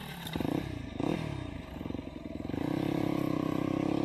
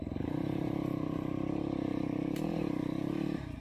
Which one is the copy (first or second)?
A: second